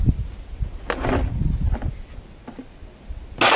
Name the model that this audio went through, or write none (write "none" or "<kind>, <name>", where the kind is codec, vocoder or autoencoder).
none